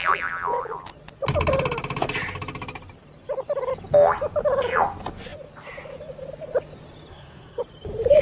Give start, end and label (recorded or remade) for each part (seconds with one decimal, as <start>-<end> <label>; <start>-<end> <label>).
0.0-7.1 recorded; 7.1-7.6 remade; 7.6-8.2 recorded

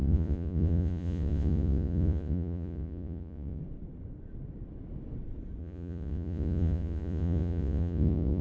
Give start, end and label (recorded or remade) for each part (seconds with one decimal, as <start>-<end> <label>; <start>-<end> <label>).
0.0-3.6 remade; 3.6-5.6 recorded; 5.6-8.4 remade

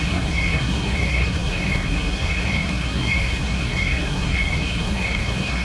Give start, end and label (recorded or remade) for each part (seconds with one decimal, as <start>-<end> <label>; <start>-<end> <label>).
0.0-5.6 remade

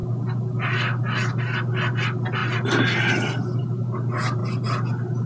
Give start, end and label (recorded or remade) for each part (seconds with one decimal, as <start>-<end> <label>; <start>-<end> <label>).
0.0-5.3 recorded

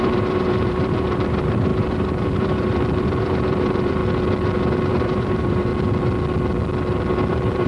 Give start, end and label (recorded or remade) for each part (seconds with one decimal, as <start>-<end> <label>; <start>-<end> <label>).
0.0-4.0 remade; 4.0-4.9 recorded; 4.9-5.7 remade; 5.7-7.3 recorded; 7.3-7.7 remade

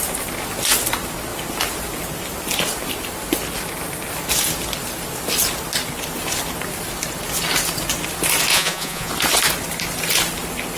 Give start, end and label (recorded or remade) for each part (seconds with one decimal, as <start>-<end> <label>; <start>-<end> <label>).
0.0-8.5 recorded; 8.5-9.1 remade; 9.1-10.8 recorded

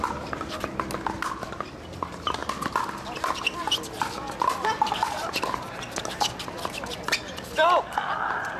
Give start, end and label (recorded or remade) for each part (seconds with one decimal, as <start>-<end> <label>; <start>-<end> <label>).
0.0-8.6 recorded